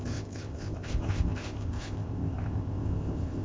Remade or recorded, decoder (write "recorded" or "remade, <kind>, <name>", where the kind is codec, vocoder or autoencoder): remade, codec, ZipCodec